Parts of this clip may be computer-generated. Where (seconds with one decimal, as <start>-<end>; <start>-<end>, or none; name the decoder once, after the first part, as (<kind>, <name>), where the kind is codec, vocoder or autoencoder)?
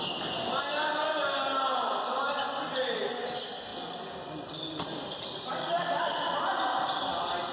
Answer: 3.7-7.0 (vocoder, BigVGAN v2)